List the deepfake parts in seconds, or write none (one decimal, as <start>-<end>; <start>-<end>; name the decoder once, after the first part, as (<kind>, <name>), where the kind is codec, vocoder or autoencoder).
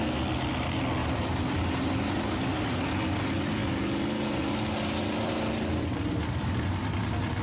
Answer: 1.0-2.5 (vocoder, BigVGAN v2)